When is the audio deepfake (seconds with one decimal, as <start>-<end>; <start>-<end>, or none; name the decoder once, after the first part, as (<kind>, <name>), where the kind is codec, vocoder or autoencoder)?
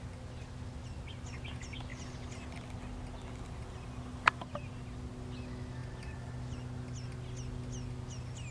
none